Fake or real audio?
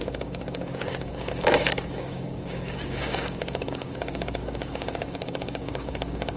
fake